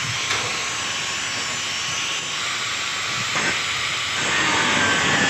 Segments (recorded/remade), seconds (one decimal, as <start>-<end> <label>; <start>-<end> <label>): 0.0-5.3 recorded